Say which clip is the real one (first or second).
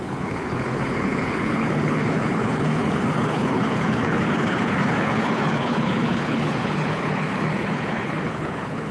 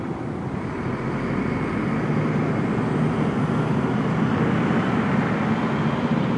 second